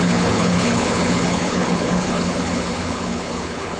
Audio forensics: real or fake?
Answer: fake